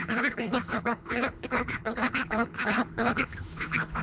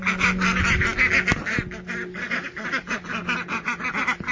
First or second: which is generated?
first